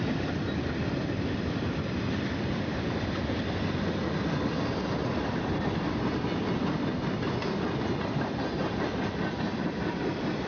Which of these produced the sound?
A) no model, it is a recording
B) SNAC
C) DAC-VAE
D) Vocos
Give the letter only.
A